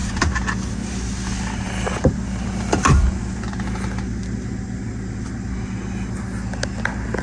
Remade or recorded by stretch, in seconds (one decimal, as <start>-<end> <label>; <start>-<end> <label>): 0.0-7.2 recorded